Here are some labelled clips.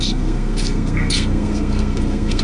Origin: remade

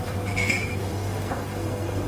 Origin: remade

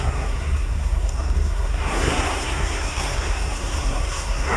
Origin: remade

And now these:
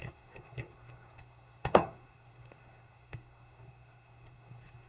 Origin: remade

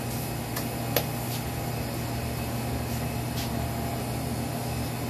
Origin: recorded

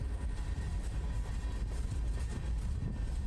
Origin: recorded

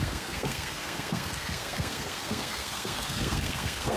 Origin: remade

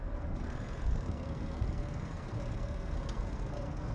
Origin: remade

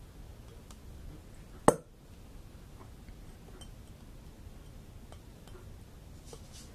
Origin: recorded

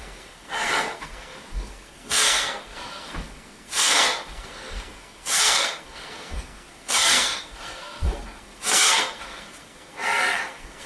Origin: remade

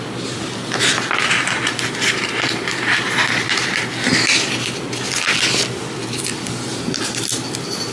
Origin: recorded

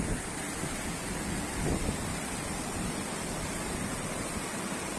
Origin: recorded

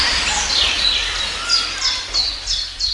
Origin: recorded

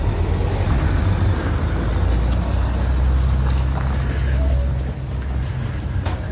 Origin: recorded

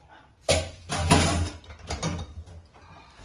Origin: recorded